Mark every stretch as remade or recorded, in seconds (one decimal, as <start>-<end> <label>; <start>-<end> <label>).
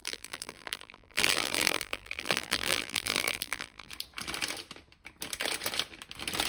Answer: 0.0-3.9 remade; 3.9-6.5 recorded